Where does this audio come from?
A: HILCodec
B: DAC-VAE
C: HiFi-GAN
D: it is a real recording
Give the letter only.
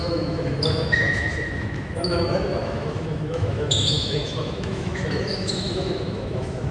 B